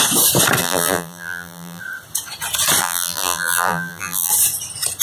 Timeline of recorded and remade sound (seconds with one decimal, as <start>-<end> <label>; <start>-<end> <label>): 0.0-0.6 recorded; 0.6-1.8 remade; 1.8-2.8 recorded; 2.8-4.3 remade; 4.3-5.0 recorded